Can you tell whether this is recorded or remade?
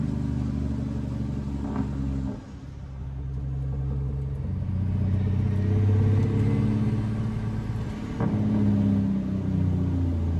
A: recorded